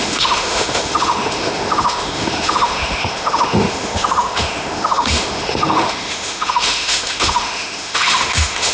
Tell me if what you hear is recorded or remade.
remade